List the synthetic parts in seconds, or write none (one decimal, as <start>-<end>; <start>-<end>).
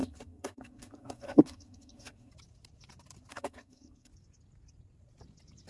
0.0-2.3; 3.3-4.1